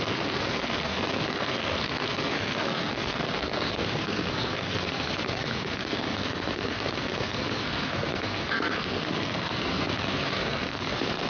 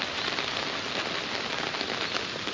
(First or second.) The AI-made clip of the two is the first